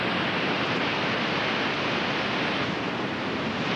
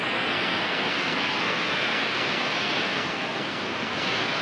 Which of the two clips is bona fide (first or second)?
first